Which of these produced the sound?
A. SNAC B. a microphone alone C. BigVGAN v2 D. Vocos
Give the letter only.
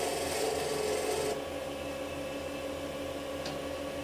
B